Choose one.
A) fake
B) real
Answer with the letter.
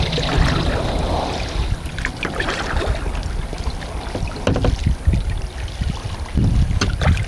B